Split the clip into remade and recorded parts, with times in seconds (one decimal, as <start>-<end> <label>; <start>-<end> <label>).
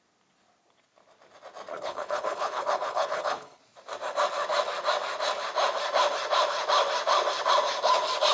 0.0-1.7 recorded; 1.7-3.6 remade; 3.6-8.3 recorded